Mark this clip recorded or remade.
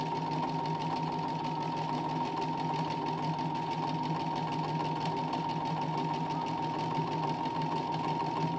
recorded